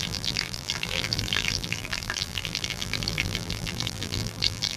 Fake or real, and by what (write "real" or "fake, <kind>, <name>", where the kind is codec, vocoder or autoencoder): fake, vocoder, BigVGAN v2